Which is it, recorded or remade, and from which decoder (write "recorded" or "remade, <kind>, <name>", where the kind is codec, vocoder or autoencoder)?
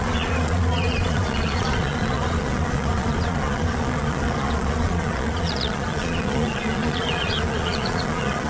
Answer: remade, vocoder, Vocos